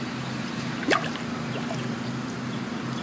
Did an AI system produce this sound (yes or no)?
no